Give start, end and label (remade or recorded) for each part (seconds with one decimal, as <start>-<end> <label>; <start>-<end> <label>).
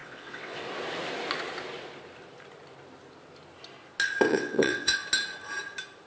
0.0-0.6 remade; 0.6-4.3 recorded; 4.3-5.0 remade; 5.0-6.1 recorded